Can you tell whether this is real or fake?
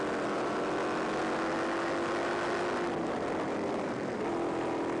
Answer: real